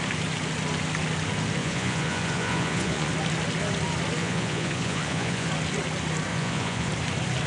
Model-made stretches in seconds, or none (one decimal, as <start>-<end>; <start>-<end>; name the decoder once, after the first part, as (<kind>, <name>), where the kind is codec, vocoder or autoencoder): 1.6-3.1 (vocoder, Vocos); 4.2-5.5; 6.3-6.9